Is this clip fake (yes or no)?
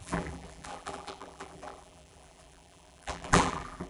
yes